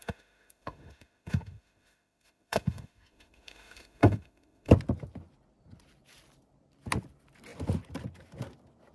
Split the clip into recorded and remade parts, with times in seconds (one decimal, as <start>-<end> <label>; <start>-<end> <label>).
0.0-4.7 remade; 4.7-8.9 recorded